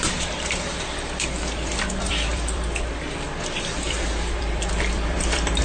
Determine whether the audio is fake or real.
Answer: fake